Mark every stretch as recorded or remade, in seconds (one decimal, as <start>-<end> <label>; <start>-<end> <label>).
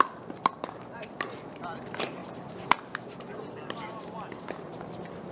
0.0-5.3 recorded